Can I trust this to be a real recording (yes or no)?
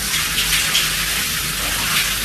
yes